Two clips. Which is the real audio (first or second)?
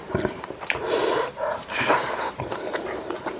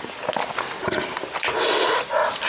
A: second